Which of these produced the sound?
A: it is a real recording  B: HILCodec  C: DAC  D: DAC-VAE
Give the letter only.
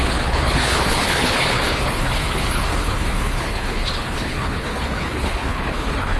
B